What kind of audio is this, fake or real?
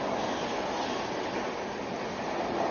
real